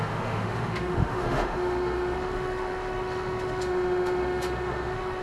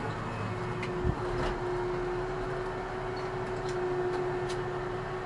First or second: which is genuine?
second